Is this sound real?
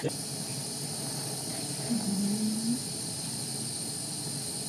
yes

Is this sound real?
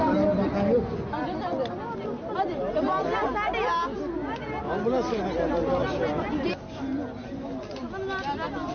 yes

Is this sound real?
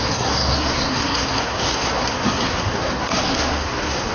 no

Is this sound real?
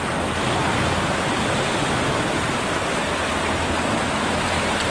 yes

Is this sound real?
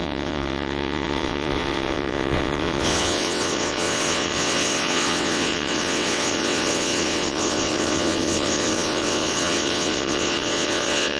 no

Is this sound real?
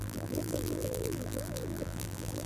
no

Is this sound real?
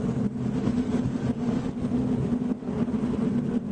yes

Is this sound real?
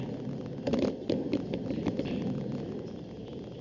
no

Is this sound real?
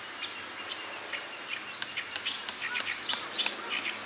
yes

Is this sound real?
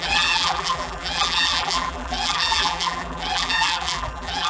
no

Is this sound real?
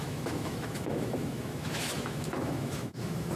no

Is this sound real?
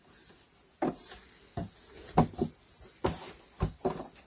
yes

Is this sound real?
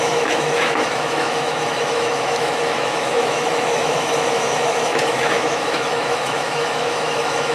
no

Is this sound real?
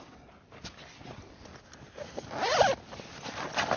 yes